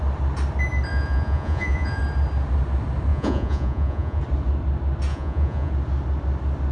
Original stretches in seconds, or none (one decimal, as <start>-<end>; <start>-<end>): 0.0-0.9; 2.0-3.1; 4.2-5.1; 5.7-6.7